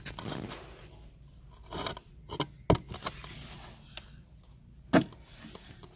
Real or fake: real